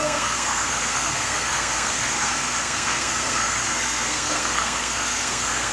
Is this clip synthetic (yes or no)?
yes